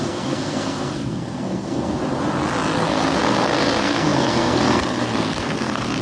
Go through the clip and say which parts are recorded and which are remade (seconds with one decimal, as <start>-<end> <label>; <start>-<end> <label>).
0.0-2.0 remade; 2.0-2.8 recorded; 2.8-6.0 remade